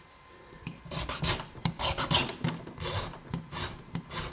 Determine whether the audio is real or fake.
real